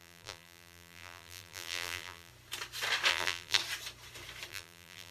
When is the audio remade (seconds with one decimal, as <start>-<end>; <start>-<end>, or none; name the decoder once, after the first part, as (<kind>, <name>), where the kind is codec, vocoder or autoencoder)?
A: 0.0-2.3 (vocoder, BigVGAN v2); 3.1-3.6; 4.5-5.1